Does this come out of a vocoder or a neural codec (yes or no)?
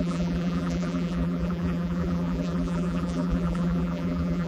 yes